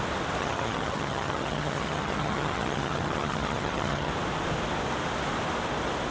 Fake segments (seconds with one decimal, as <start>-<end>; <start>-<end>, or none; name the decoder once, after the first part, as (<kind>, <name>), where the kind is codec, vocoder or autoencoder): 0.4-4.1 (vocoder, HiFi-GAN)